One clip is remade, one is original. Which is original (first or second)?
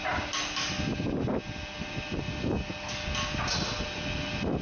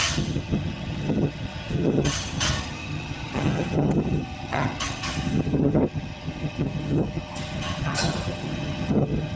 first